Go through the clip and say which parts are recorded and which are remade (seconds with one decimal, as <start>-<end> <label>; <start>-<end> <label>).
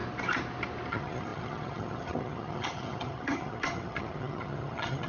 0.0-0.9 recorded; 0.9-5.1 remade